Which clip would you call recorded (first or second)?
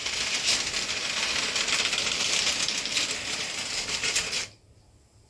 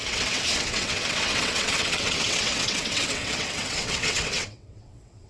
first